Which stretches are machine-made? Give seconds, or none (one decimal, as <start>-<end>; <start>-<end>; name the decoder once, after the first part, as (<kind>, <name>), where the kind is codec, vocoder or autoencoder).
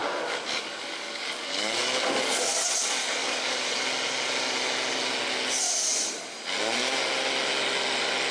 0.0-2.6 (codec, DAC); 3.0-3.7